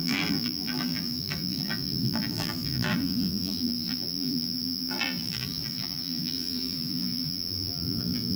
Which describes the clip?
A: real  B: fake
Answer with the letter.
B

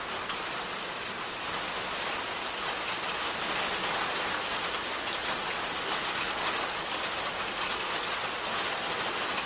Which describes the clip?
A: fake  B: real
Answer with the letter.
B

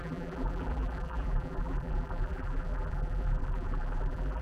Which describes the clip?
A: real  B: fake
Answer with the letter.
B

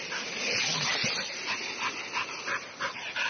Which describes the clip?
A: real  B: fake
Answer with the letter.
A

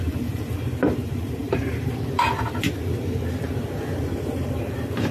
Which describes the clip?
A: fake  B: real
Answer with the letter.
A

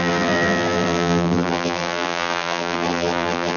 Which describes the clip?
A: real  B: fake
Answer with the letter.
B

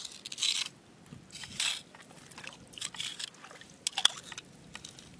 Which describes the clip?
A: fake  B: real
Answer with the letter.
B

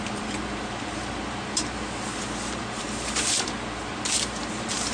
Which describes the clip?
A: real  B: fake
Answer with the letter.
B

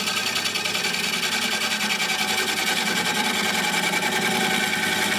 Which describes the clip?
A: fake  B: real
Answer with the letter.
B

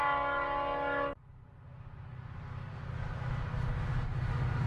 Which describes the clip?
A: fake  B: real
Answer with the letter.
B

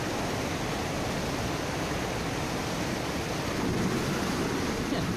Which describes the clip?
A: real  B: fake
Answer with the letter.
A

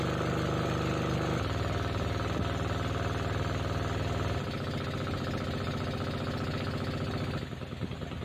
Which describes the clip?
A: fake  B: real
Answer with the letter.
B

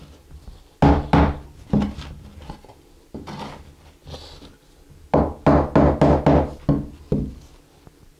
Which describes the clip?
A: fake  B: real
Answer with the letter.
B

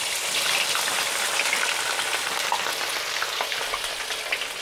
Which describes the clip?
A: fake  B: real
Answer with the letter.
B